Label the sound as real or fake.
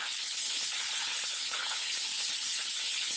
fake